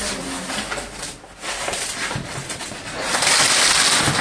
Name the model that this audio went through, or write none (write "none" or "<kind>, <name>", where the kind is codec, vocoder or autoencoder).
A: none